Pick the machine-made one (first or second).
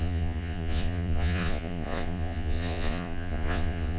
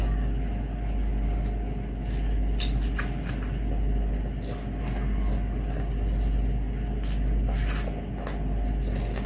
first